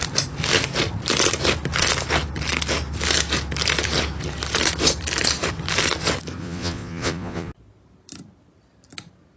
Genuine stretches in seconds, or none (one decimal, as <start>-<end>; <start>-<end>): 0.0-6.4; 7.5-9.4